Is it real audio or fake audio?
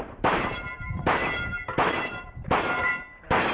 fake